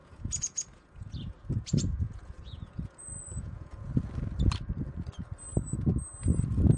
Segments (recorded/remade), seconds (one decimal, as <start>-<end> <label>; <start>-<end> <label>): 0.0-3.9 remade; 3.9-6.8 recorded

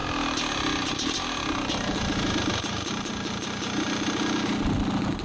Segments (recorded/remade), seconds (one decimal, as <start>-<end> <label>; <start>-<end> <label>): 0.0-5.2 recorded

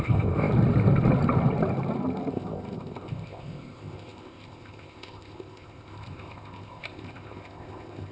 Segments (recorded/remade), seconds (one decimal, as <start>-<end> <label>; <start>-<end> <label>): 0.0-0.5 remade; 0.5-2.3 recorded; 2.3-8.1 remade

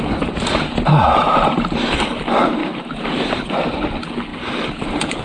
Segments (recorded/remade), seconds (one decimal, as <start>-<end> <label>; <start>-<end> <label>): 0.0-0.9 recorded; 0.9-2.0 remade; 2.0-2.6 recorded; 2.6-3.5 remade; 3.5-4.3 recorded; 4.3-5.2 remade

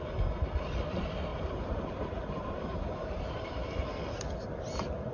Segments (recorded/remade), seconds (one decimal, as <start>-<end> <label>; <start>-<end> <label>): 0.0-1.3 recorded; 1.3-3.3 remade; 3.3-5.1 recorded

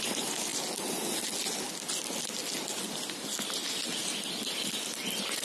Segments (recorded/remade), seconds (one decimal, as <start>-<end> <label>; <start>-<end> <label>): 0.0-5.4 recorded

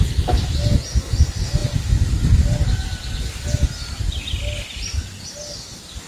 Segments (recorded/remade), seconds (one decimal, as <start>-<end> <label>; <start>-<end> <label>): 0.0-6.1 recorded

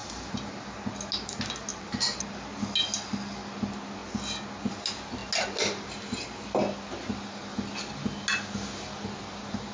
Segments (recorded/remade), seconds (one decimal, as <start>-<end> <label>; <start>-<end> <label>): 0.0-0.6 remade; 0.6-1.7 recorded; 1.7-2.2 remade; 2.2-9.7 recorded